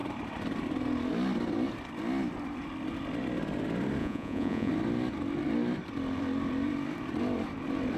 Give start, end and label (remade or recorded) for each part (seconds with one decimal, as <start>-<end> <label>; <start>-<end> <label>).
0.0-4.0 recorded; 4.0-4.7 remade; 4.7-8.0 recorded